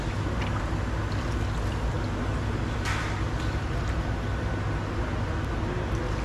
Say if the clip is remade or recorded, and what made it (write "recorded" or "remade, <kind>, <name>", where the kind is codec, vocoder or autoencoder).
recorded